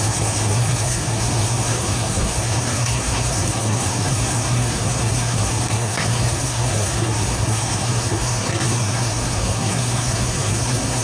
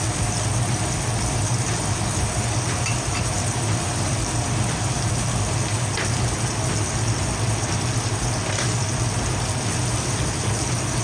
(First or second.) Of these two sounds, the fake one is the first